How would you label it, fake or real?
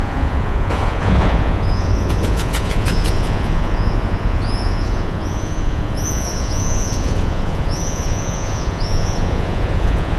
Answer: fake